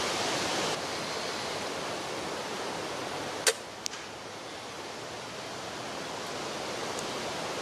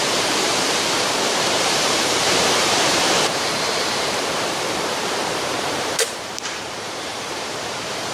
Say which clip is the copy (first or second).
second